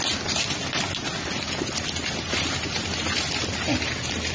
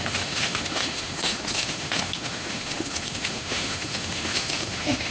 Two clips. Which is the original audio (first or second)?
first